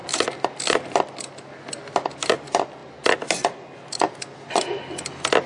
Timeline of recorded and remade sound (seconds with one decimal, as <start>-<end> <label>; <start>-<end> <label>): 0.0-5.5 recorded